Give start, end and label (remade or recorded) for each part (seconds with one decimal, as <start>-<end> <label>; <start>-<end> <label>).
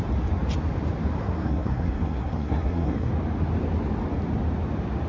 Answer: 0.0-1.2 recorded; 1.2-3.1 remade; 3.1-5.1 recorded